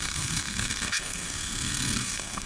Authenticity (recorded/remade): remade